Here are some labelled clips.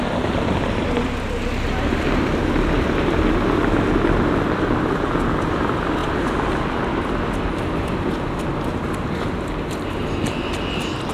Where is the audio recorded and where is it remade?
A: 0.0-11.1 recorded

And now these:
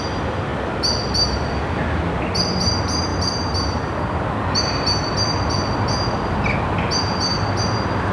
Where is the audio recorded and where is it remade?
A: 0.0-8.1 recorded

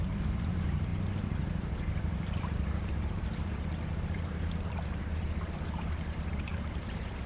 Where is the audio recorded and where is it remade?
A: 0.0-7.3 remade

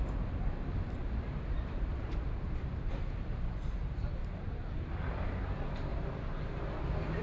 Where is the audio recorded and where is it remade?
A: 0.0-1.0 recorded; 1.0-3.8 remade; 3.8-4.2 recorded; 4.2-4.9 remade; 4.9-7.2 recorded

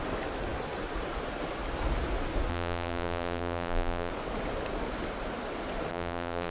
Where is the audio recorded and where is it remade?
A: 0.0-2.5 recorded; 2.5-4.1 remade; 4.1-5.9 recorded; 5.9-6.5 remade

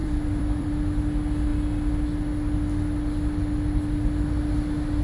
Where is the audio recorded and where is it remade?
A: 0.0-0.7 remade; 0.7-5.0 recorded

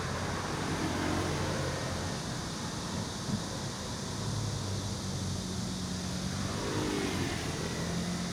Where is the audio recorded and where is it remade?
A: 0.0-0.8 recorded; 0.8-1.8 remade; 1.8-8.3 recorded

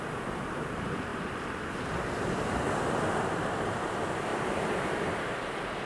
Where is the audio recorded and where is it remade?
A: 0.0-1.1 recorded; 1.1-1.8 remade; 1.8-4.3 recorded; 4.3-5.2 remade; 5.2-5.9 recorded